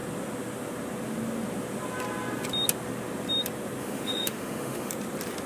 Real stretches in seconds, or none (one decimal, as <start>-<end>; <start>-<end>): 0.0-3.8; 4.9-5.5